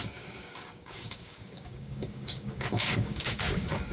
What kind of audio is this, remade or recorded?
remade